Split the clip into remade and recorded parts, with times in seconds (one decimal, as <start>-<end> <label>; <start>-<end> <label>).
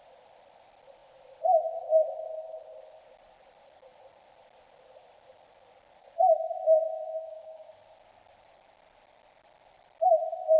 0.0-6.0 recorded; 6.0-7.7 remade; 7.7-10.6 recorded